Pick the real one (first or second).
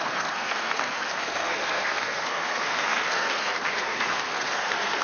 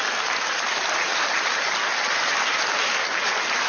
second